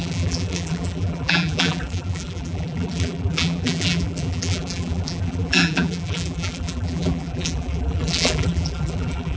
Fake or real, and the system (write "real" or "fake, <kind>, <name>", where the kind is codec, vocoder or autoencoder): fake, vocoder, BigVGAN v2